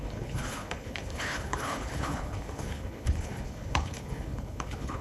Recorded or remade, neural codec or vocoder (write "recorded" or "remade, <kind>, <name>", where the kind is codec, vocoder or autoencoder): remade, codec, HILCodec